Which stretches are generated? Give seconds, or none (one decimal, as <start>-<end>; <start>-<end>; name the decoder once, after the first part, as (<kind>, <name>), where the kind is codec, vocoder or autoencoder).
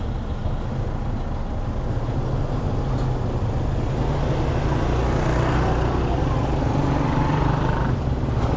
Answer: none